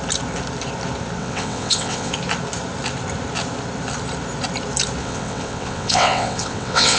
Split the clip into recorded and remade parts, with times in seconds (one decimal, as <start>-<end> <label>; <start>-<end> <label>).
0.0-1.2 recorded; 1.2-2.1 remade; 2.1-5.0 recorded; 5.0-7.0 remade